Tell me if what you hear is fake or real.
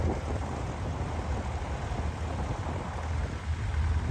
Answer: real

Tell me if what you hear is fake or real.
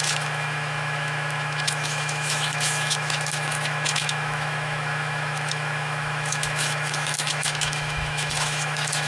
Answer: fake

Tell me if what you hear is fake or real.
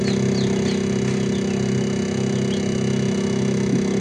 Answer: real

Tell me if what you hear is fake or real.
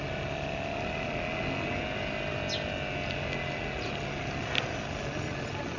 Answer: real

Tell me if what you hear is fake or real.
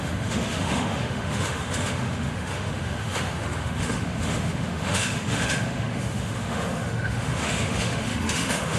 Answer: fake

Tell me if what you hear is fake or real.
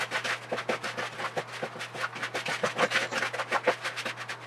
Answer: real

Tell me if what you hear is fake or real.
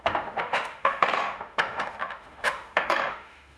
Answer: fake